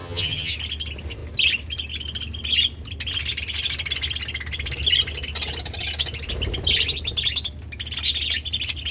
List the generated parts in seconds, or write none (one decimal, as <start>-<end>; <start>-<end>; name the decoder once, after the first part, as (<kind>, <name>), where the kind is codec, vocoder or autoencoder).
0.0-0.5 (vocoder, HiFi-GAN)